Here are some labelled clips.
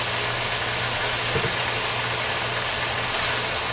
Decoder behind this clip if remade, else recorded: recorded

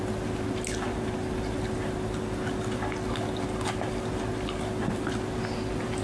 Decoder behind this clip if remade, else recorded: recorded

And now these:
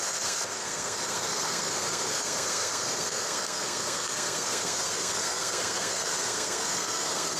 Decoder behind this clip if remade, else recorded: remade, codec, SNAC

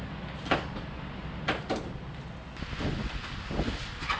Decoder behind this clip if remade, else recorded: recorded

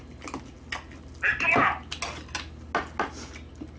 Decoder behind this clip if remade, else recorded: recorded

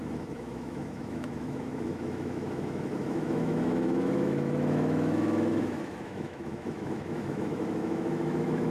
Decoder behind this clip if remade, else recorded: remade, autoencoder, DAC-VAE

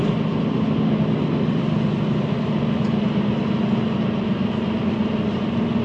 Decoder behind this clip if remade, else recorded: recorded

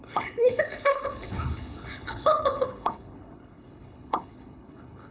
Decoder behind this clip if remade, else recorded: remade, codec, HILCodec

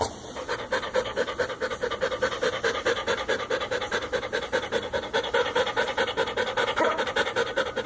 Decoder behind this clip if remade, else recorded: recorded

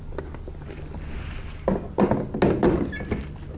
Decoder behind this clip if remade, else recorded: recorded